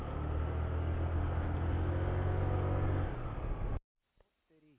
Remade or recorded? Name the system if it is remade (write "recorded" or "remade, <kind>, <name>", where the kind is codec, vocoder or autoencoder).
recorded